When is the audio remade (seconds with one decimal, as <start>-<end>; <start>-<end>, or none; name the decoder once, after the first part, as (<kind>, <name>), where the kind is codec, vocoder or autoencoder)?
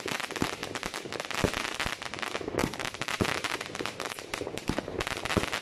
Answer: 2.6-5.0 (vocoder, BigVGAN v2)